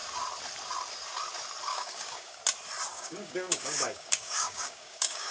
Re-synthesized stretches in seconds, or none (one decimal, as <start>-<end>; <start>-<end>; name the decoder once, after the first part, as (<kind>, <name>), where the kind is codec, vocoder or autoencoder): 1.7-2.4 (codec, DAC); 2.9-5.3